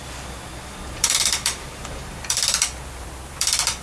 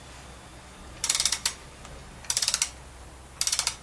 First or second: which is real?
second